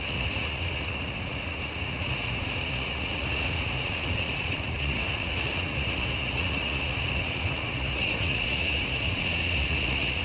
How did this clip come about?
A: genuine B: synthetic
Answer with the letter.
B